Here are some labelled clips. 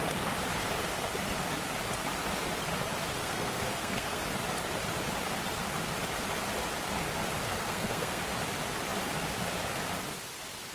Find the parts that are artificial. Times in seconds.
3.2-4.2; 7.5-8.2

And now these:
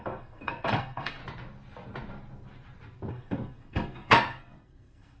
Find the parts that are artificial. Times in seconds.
0.0-1.2; 3.1-5.2

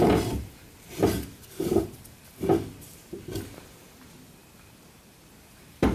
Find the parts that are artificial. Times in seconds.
none

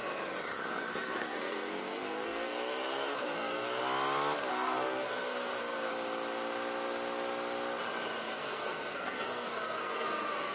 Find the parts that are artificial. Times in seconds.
0.7-3.8; 4.5-5.9; 8.2-10.5

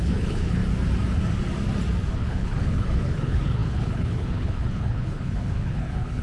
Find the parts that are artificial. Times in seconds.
0.0-0.6; 2.1-6.2